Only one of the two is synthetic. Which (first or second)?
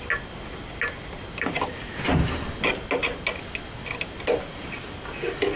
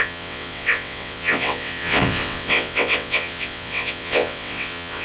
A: second